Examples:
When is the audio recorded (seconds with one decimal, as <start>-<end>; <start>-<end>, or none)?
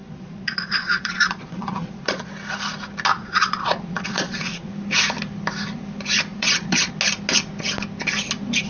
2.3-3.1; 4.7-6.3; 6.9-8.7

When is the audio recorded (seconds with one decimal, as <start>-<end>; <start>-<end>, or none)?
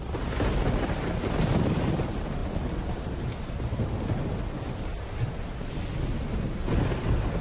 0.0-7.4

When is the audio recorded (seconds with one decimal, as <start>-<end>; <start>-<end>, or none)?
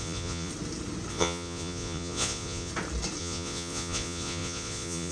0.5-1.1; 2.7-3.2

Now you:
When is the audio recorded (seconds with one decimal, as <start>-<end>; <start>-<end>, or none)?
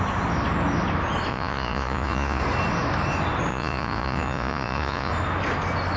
0.0-1.3; 2.4-3.5; 5.1-6.0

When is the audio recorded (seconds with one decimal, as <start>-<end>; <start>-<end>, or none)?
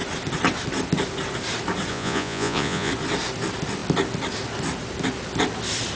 0.0-1.9; 2.9-6.0